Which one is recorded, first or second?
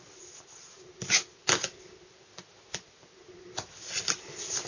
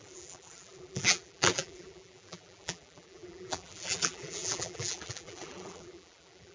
first